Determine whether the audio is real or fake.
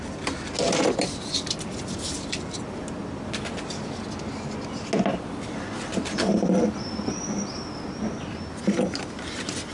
real